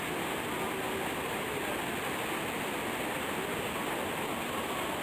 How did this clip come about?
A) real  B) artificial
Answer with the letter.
A